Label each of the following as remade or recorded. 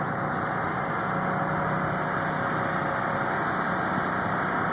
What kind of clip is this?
recorded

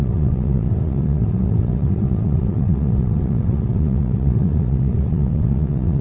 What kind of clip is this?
remade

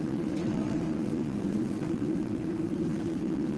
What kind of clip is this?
remade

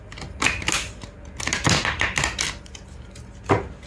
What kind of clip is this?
recorded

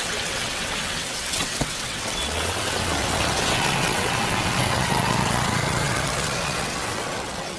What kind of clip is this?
remade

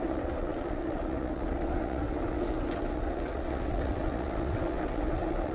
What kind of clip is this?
remade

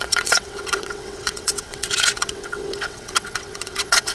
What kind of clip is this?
remade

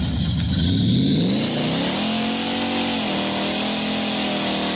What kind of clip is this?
recorded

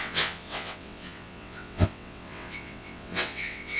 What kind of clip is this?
remade